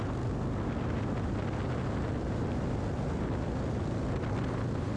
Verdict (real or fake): real